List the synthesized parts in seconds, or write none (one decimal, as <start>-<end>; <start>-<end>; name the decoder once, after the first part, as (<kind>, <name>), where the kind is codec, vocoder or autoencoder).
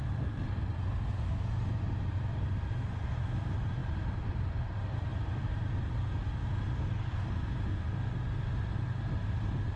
5.1-6.2 (vocoder, BigVGAN v2)